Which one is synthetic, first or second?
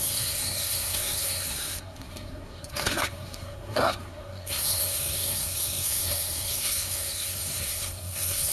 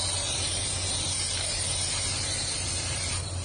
first